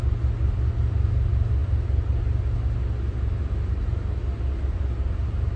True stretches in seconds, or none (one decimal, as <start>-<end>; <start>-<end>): 0.0-5.6